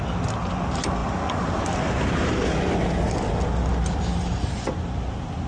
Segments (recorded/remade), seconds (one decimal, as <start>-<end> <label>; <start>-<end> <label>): 0.0-5.5 recorded